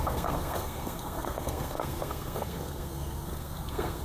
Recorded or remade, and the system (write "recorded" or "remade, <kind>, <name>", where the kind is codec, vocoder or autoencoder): remade, codec, SNAC